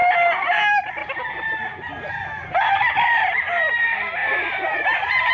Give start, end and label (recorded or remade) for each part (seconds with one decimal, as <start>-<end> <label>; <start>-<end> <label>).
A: 0.0-0.6 remade; 0.6-4.2 recorded; 4.2-5.3 remade